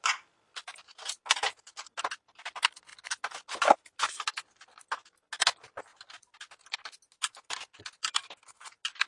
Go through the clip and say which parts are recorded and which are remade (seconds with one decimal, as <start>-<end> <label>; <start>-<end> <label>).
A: 0.0-9.1 recorded